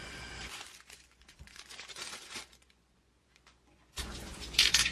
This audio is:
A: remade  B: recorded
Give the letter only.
A